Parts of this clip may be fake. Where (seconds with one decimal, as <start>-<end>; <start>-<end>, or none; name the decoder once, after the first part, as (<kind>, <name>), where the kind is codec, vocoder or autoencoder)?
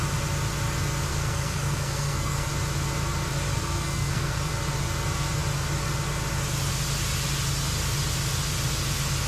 1.1-2.5 (codec, SNAC); 3.5-4.5